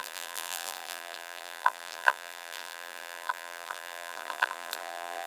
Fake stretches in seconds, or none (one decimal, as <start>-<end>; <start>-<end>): 0.0-5.3